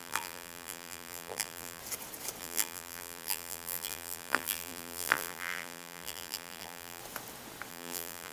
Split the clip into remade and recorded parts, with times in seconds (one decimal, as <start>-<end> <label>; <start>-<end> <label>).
0.0-1.8 remade; 1.8-2.4 recorded; 2.4-7.0 remade; 7.0-7.7 recorded; 7.7-8.3 remade